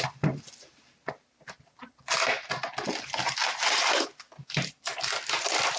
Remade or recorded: recorded